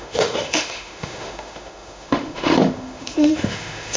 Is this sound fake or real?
fake